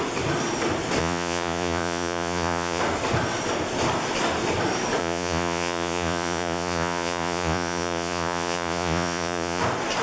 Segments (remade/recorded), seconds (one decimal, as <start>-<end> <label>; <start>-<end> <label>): 0.0-1.0 recorded; 1.0-2.8 remade; 2.8-5.0 recorded; 5.0-9.6 remade; 9.6-10.0 recorded